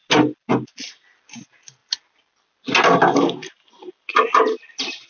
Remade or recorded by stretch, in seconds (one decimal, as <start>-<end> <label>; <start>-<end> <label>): 0.0-5.1 recorded